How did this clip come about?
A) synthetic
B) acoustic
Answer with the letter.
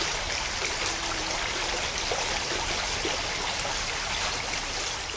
B